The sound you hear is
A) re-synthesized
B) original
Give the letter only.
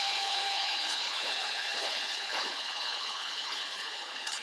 A